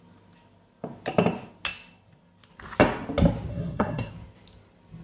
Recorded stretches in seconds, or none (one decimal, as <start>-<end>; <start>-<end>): 0.0-3.5; 4.1-5.0